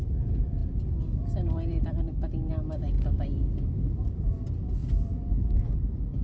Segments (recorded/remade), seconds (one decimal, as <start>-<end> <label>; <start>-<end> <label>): 0.0-0.6 recorded; 0.6-4.3 remade; 4.3-4.8 recorded; 4.8-5.8 remade; 5.8-6.2 recorded